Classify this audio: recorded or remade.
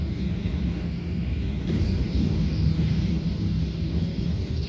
remade